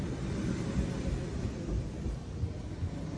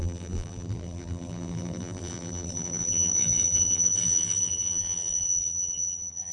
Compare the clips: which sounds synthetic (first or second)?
second